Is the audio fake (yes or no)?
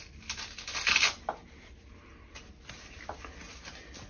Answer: no